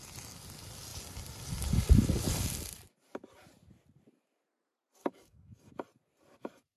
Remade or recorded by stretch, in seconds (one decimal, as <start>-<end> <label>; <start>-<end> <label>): 0.0-5.0 recorded; 5.0-5.7 remade; 5.7-6.8 recorded